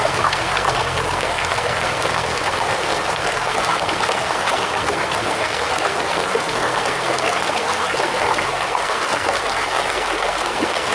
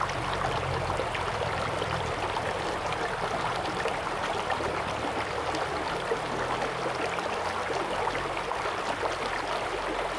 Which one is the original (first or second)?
second